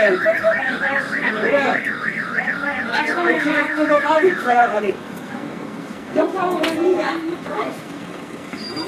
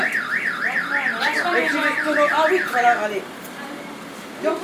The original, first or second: second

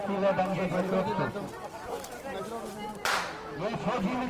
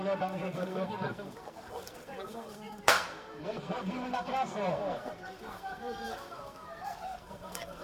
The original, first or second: first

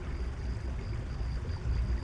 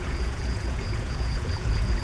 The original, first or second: first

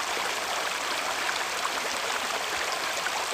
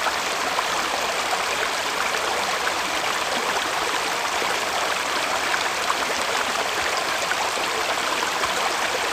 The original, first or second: first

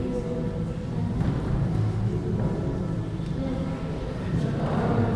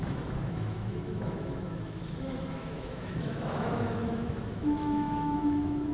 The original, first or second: first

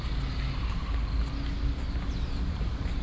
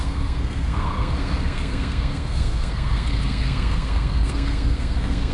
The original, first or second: first